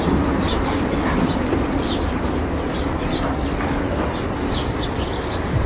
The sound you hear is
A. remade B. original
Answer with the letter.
B